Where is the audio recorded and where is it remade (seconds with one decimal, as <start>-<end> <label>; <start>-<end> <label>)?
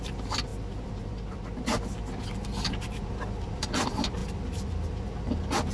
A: 0.0-1.7 remade; 1.7-2.8 recorded; 2.8-5.7 remade